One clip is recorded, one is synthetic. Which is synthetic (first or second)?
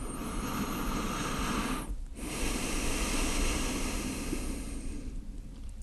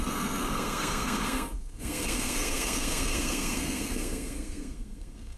second